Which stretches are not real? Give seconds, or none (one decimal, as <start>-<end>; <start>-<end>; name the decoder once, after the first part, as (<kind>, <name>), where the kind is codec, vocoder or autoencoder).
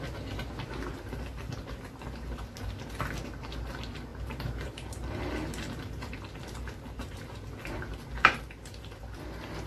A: 4.1-6.1 (vocoder, BigVGAN v2); 7.0-7.8